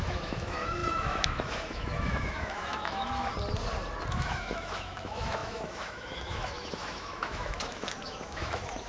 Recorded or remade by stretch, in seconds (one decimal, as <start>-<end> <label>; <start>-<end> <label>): 0.0-3.3 remade; 3.3-4.1 recorded; 4.1-8.9 remade